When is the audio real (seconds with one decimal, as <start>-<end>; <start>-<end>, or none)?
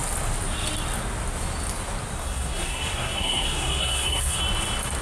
0.0-2.2; 4.4-5.0